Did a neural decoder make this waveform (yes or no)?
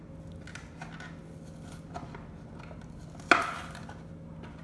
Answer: no